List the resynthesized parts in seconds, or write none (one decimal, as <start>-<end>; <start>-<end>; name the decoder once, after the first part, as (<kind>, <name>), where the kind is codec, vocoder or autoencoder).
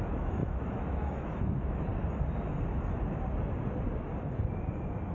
0.0-1.9 (autoencoder, DAC-VAE)